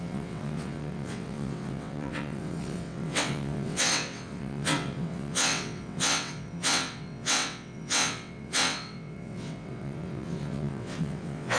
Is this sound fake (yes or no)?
yes